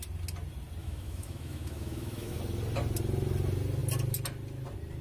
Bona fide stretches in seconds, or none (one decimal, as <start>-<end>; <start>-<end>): 0.0-0.8; 2.4-5.0